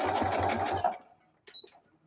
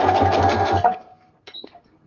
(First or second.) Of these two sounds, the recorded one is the first